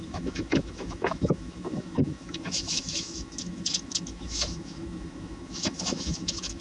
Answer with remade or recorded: remade